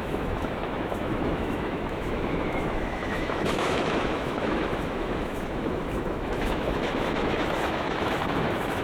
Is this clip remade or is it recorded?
remade